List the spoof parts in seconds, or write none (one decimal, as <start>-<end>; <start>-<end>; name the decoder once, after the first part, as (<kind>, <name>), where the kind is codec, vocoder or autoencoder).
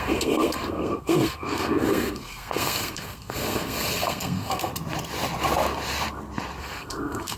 0.0-4.7 (codec, SNAC); 6.6-7.4